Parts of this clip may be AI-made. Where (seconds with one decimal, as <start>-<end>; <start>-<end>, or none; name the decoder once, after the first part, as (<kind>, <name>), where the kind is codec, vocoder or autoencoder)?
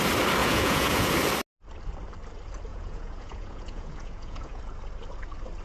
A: 0.4-1.1 (vocoder, Vocos); 2.7-4.6